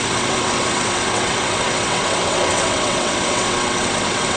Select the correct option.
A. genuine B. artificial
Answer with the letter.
B